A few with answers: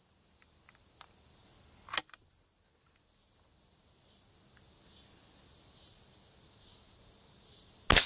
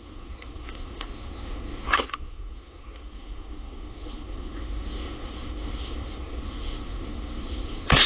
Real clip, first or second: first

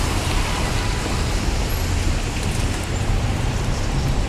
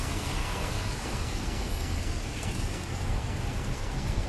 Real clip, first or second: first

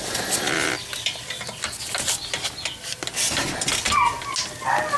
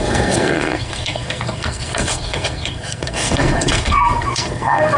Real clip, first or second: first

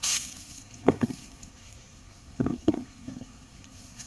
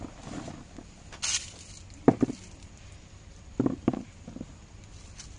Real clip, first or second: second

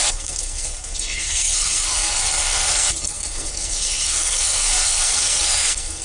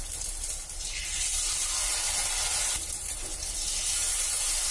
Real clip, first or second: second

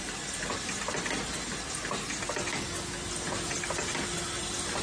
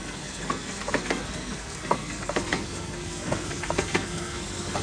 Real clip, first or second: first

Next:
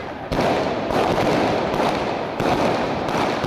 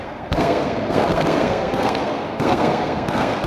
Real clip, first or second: first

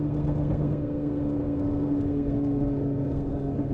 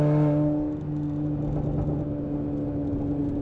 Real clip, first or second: second